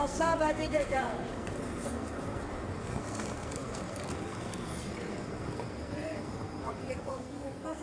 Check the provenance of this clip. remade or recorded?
remade